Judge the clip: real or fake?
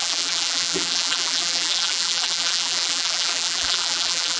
fake